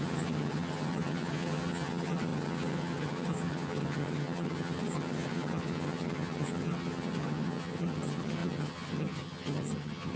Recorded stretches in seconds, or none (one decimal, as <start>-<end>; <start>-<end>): none